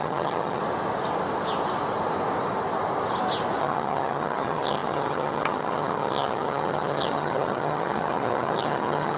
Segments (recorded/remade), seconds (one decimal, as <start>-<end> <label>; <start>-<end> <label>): 0.0-0.6 remade; 0.6-3.6 recorded; 3.6-9.2 remade